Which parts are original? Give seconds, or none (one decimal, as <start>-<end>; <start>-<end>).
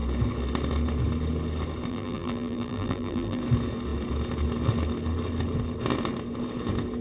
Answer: 0.0-1.9; 3.4-7.0